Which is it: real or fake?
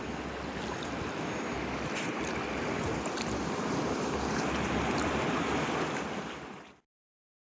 real